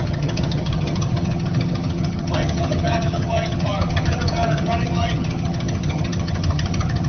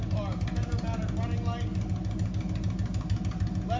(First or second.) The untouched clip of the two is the second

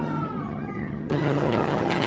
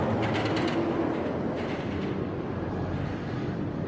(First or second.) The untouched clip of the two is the second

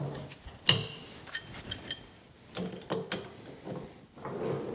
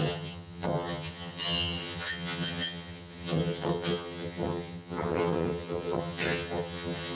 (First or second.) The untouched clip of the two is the first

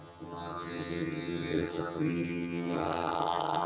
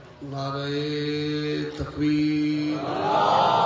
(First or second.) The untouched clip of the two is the second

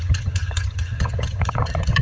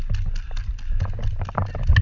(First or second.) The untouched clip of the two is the second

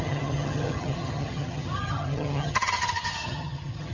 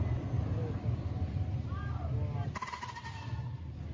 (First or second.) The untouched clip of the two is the second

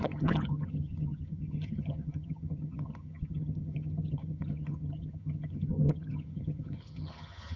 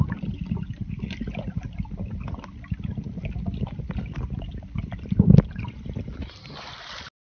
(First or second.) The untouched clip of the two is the second